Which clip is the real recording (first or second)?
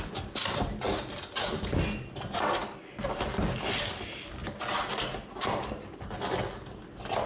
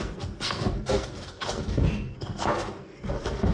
first